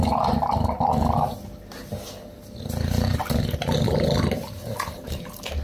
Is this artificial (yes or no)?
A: no